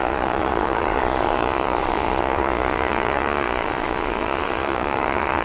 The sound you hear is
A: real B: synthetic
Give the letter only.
B